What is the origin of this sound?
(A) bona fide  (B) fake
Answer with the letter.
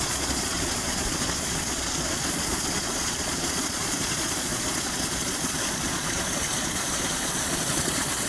B